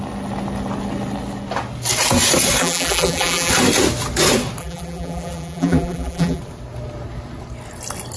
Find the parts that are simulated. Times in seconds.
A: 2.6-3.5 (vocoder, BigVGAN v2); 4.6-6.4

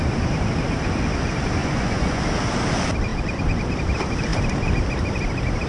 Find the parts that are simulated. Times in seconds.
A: 1.6-2.2 (vocoder, Vocos)